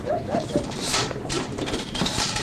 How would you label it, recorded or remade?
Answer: remade